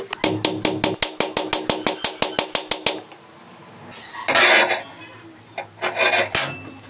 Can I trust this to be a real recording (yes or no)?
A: yes